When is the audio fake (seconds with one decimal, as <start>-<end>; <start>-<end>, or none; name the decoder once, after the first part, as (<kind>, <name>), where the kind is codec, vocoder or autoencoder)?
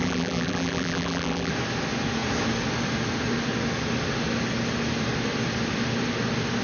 0.0-1.5 (vocoder, BigVGAN v2)